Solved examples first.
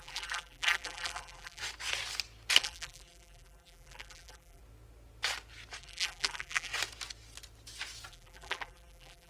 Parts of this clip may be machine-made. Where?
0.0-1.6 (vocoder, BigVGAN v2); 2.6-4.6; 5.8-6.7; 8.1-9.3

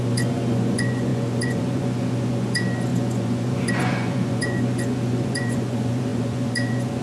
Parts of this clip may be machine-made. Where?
0.0-7.0 (vocoder, Vocos)

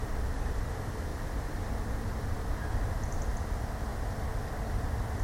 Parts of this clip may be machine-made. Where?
none

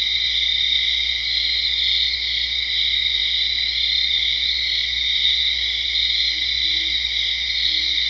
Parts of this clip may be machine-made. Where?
none